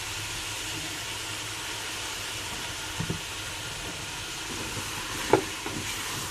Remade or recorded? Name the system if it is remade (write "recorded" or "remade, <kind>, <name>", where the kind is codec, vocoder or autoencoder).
recorded